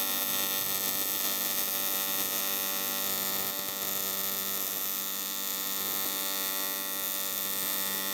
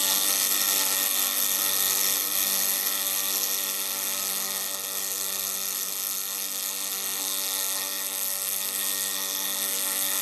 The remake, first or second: second